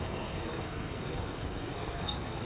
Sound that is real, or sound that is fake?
fake